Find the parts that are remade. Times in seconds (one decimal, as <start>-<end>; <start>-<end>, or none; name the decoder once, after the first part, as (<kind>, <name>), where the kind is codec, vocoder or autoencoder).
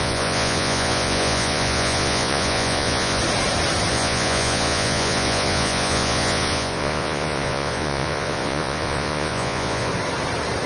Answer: 0.0-3.2 (vocoder, Vocos); 3.9-9.9